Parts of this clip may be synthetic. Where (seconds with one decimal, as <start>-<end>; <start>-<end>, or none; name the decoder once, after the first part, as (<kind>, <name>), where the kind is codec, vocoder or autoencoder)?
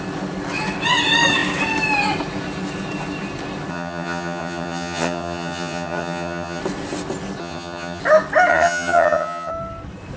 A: 3.7-6.6 (vocoder, HiFi-GAN); 7.4-8.0; 8.5-9.5